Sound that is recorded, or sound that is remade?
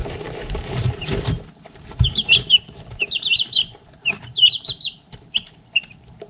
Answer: remade